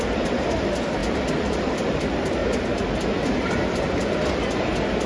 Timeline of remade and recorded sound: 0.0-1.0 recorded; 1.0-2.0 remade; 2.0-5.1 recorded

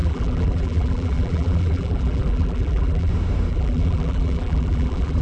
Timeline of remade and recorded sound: 0.0-3.1 remade; 3.1-3.5 recorded; 3.5-5.2 remade

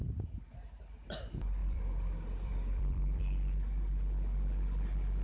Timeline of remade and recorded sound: 0.0-1.6 recorded; 1.6-3.2 remade; 3.2-5.2 recorded

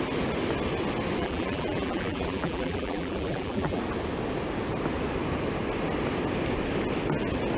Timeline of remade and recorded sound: 0.0-1.2 recorded; 1.2-3.8 remade; 3.8-7.6 recorded